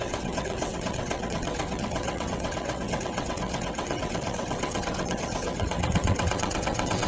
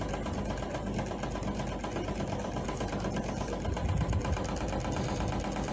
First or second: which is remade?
first